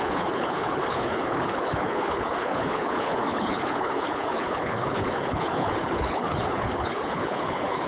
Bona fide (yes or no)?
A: no